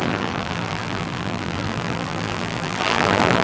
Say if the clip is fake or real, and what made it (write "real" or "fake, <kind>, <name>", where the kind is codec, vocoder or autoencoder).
fake, vocoder, BigVGAN v2